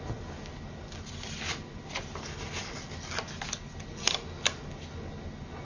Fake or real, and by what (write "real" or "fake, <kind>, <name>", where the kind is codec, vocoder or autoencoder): real